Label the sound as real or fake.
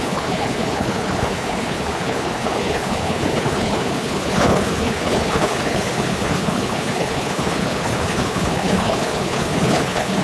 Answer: fake